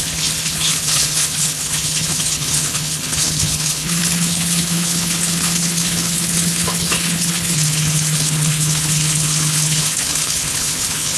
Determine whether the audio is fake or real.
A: fake